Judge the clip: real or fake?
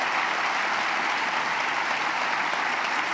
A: real